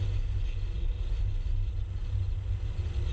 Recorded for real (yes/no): yes